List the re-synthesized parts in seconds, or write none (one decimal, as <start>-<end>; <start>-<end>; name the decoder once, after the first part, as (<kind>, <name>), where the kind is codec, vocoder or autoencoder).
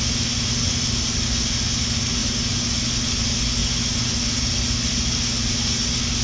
none